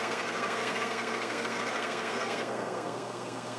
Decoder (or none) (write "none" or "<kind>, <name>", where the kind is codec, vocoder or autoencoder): codec, SNAC